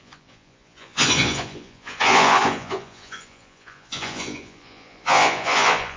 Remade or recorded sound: remade